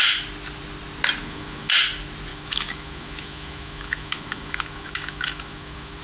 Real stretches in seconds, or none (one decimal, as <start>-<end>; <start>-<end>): 0.0-1.2; 1.7-2.3